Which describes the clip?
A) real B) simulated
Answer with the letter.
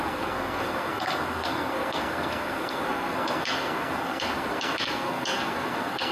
B